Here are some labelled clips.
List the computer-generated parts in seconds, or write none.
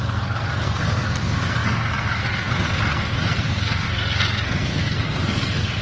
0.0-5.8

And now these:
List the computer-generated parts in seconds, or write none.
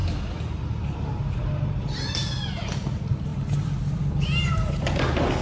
none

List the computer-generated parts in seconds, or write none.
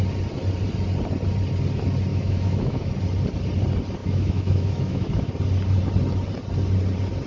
2.1-2.9; 4.0-5.3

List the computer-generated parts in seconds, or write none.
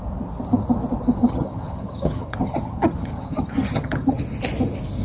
1.2-4.2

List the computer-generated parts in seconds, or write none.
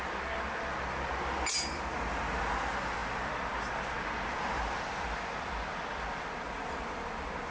none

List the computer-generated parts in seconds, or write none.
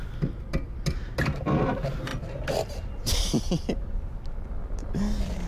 none